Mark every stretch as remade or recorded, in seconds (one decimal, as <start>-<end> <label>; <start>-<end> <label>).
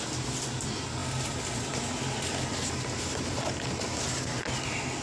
0.0-5.0 recorded